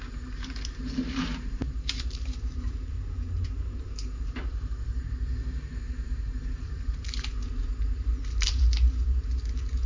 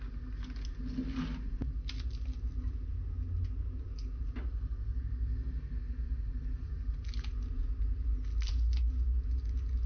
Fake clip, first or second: first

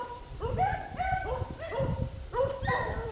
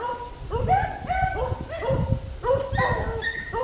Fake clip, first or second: first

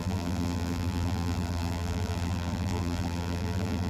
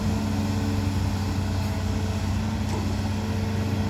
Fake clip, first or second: first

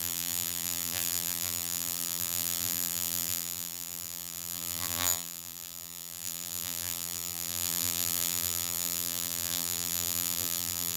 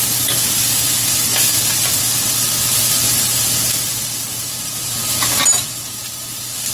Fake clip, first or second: first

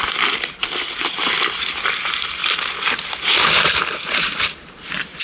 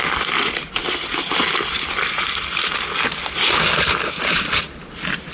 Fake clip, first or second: first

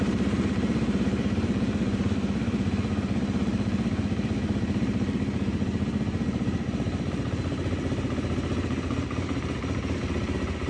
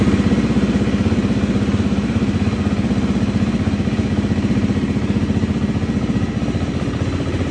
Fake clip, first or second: first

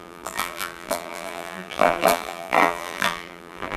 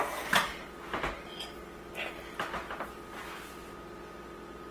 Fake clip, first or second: first